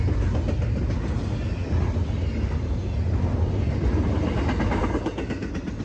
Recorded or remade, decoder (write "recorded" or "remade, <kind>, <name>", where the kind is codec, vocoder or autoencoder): recorded